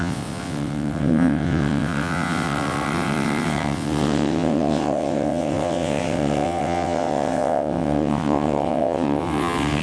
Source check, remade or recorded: remade